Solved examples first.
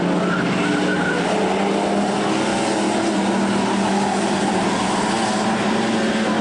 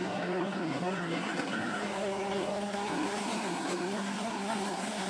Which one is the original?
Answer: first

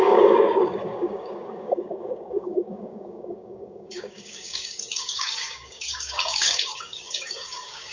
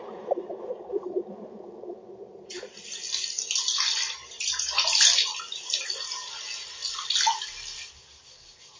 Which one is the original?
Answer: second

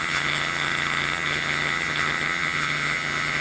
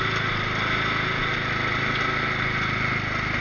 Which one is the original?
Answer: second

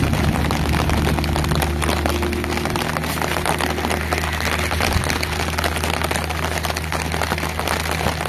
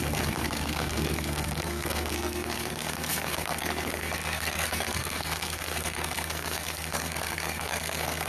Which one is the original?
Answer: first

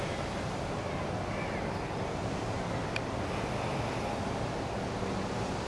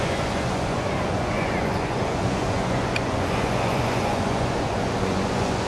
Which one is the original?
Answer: first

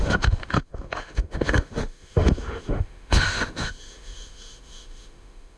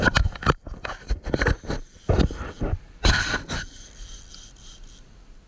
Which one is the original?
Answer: second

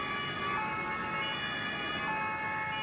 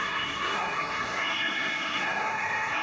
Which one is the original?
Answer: first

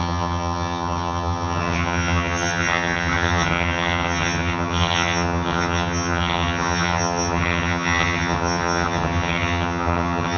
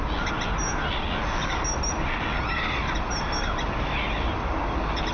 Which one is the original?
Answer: second